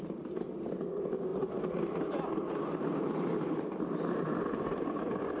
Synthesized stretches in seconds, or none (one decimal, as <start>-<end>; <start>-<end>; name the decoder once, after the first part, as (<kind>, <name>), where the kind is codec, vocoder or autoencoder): none